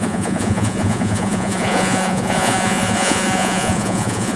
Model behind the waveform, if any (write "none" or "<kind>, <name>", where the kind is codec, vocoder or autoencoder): vocoder, Vocos